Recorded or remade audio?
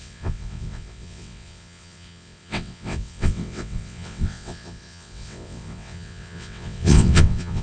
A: remade